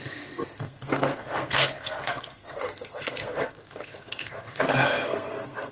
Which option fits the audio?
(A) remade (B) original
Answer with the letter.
A